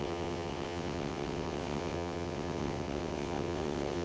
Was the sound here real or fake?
fake